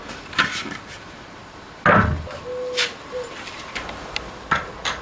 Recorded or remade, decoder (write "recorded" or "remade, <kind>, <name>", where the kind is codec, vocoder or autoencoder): recorded